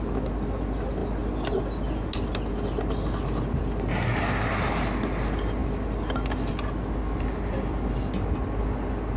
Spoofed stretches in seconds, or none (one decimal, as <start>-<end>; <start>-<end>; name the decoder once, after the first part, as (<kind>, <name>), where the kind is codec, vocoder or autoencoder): none